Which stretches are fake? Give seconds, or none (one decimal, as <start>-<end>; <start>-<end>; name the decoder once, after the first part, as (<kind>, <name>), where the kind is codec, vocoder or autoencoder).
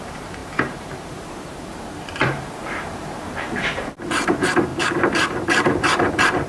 0.0-6.5 (vocoder, BigVGAN v2)